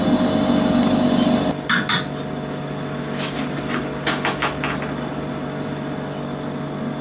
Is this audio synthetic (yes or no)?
no